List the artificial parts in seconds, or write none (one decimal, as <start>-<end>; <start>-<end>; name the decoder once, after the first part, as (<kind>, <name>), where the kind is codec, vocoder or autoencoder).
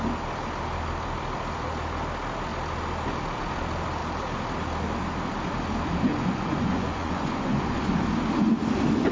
6.1-7.9 (vocoder, Vocos)